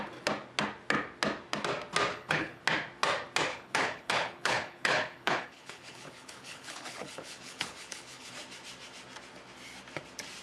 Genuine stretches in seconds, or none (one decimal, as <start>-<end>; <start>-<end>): 0.0-2.1; 2.6-3.5; 8.3-10.4